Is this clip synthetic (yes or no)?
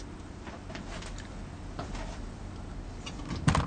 no